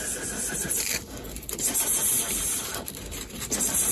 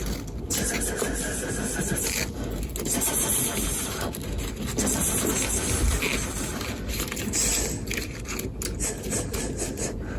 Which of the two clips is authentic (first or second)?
second